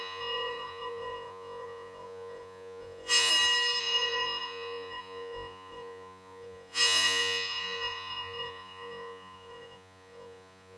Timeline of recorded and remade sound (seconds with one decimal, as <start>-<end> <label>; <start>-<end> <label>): 0.0-3.3 remade; 3.3-3.8 recorded; 3.8-10.8 remade